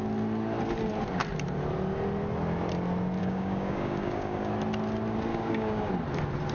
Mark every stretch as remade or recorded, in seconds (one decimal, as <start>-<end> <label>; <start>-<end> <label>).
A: 0.0-3.2 recorded; 3.2-4.5 remade; 4.5-5.3 recorded; 5.3-5.9 remade; 5.9-6.5 recorded